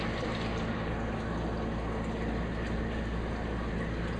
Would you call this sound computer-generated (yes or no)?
no